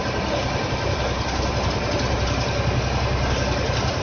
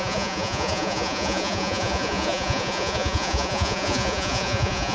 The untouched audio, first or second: first